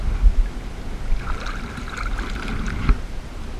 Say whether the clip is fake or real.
real